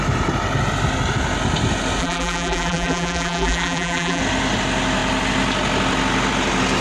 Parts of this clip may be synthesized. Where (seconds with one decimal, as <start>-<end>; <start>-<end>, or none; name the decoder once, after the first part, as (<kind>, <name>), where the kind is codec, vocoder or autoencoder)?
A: 2.0-4.2 (vocoder, BigVGAN v2)